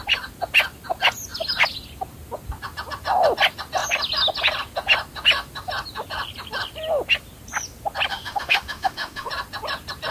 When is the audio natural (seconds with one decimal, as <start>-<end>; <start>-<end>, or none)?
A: 0.0-8.1; 9.3-10.1